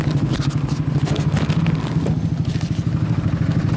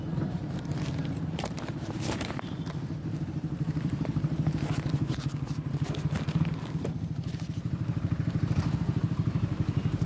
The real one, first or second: first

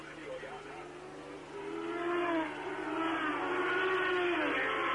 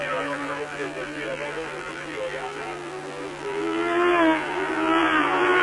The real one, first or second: first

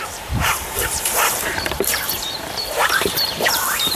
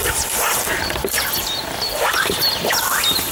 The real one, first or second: second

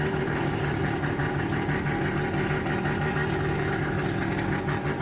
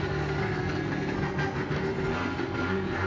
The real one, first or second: first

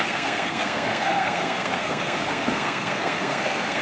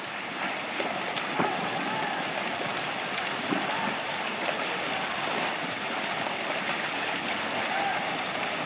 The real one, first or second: second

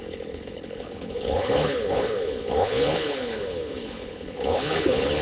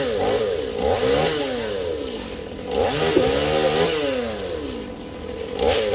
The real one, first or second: second